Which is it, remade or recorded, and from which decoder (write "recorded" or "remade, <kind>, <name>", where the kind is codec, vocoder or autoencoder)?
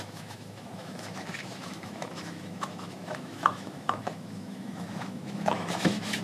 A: remade, autoencoder, DAC-VAE